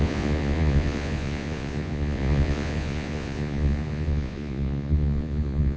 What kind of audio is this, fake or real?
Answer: fake